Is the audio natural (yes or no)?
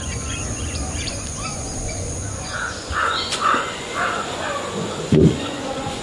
no